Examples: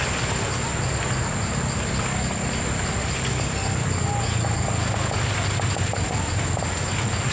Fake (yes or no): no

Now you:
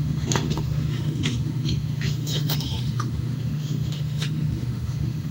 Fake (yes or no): yes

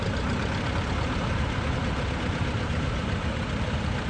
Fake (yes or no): no